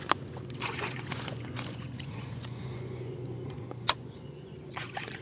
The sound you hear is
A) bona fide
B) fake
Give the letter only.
B